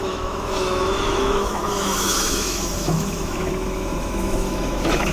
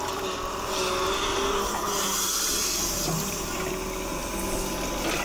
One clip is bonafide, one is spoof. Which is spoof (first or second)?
first